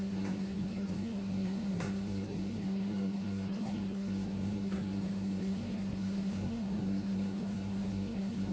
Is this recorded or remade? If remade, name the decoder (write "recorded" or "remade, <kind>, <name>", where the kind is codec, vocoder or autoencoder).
remade, codec, SNAC